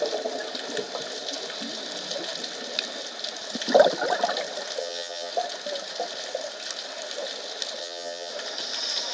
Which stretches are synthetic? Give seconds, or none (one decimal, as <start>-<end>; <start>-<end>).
4.8-5.3; 7.8-8.3